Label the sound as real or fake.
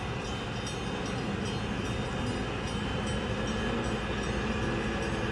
real